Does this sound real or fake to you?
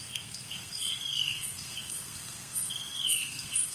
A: fake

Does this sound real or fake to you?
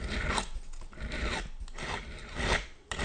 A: real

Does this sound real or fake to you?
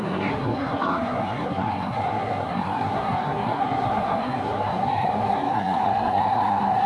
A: fake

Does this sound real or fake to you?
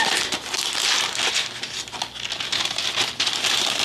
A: real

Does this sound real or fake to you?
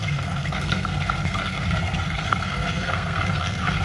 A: fake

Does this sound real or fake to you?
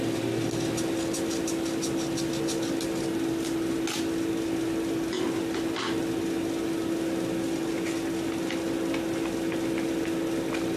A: real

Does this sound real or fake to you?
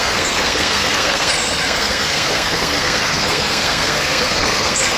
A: fake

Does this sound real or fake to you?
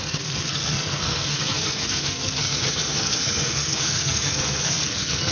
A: fake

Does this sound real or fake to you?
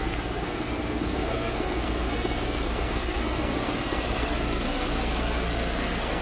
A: fake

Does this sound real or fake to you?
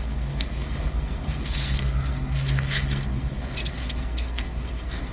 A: fake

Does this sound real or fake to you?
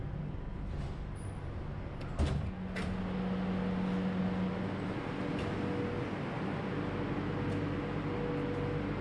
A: real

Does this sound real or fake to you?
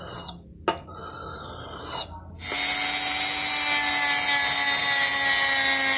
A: real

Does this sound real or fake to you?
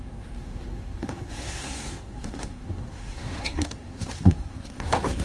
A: fake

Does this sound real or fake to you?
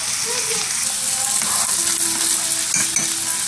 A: real